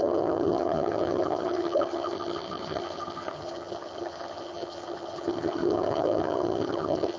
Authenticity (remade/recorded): remade